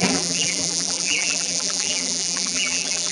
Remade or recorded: remade